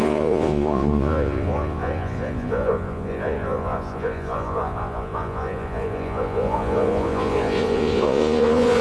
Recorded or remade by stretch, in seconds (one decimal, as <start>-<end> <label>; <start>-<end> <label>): 0.0-8.8 remade